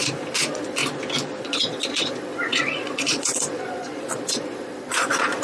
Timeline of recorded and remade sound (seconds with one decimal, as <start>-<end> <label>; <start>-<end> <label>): 0.0-0.8 remade; 0.8-1.4 recorded; 1.4-5.4 remade